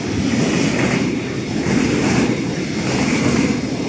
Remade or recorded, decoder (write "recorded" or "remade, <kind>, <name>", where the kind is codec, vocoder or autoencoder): recorded